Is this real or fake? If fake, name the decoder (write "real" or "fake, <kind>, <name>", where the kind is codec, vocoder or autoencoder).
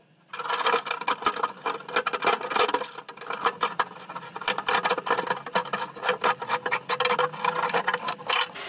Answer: real